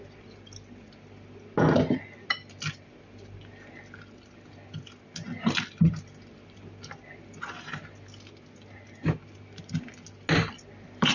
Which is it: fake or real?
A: real